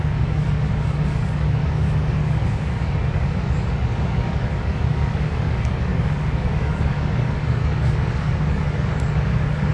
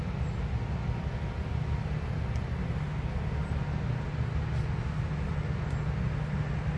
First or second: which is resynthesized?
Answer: first